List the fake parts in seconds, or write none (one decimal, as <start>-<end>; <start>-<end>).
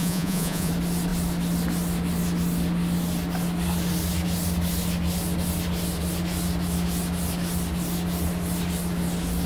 0.0-0.7